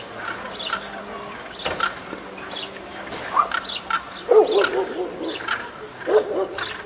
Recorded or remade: recorded